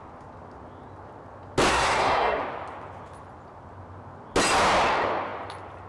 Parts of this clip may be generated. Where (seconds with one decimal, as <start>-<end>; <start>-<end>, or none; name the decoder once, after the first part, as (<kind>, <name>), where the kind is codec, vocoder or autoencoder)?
1.7-2.4 (codec, SNAC)